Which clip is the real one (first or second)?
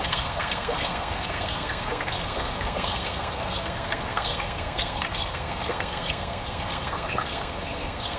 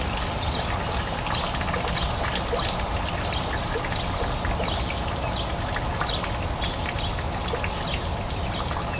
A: second